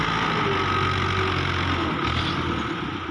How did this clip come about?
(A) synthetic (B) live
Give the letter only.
B